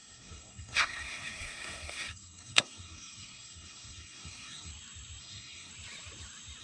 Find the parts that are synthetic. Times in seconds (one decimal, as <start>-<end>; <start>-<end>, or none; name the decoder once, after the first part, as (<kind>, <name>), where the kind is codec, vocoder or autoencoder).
0.0-4.7 (codec, SNAC); 5.2-5.7